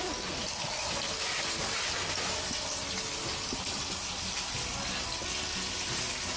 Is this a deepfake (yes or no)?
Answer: no